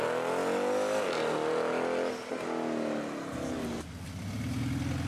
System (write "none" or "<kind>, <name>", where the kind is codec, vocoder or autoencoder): none